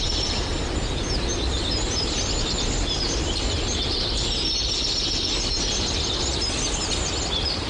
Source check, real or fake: real